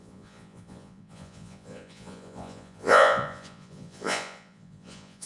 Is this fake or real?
fake